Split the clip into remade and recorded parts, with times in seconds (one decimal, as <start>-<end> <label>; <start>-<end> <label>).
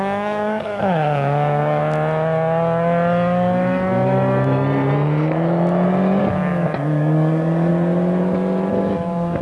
0.0-1.8 remade; 1.8-6.2 recorded; 6.2-7.7 remade; 7.7-8.7 recorded; 8.7-9.4 remade